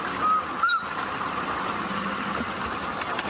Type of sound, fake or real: real